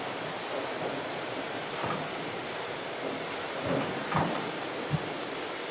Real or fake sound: real